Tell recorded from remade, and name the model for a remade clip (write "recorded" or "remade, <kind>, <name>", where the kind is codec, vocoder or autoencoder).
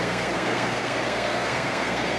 remade, codec, SNAC